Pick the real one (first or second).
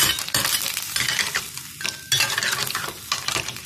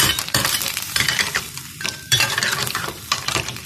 first